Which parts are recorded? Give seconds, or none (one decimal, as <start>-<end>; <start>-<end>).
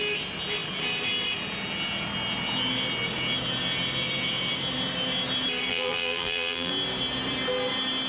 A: 0.0-5.7; 6.7-8.1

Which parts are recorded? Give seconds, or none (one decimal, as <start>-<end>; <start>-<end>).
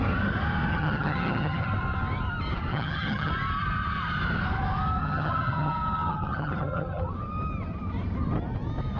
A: 0.0-0.7; 1.7-2.7; 3.3-5.0; 7.1-9.0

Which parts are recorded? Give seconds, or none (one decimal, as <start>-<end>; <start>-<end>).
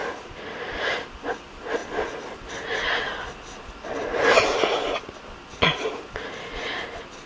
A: 0.0-7.3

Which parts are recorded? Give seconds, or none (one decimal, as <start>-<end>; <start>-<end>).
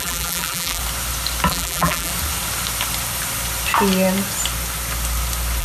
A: 0.8-1.5; 2.1-5.6